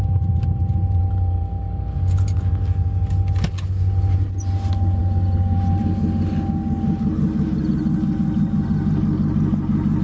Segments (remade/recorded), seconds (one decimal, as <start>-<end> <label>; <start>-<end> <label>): 0.0-10.0 recorded